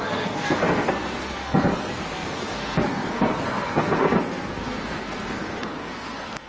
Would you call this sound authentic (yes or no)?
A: no